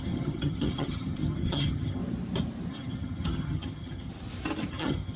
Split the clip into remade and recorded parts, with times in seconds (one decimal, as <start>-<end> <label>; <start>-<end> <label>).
0.0-2.0 remade; 2.0-2.7 recorded; 2.7-4.1 remade; 4.1-4.7 recorded; 4.7-5.2 remade